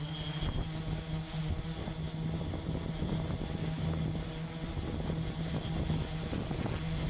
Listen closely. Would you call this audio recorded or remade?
recorded